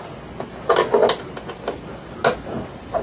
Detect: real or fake real